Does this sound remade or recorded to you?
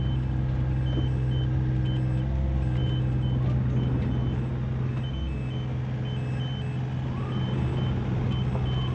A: recorded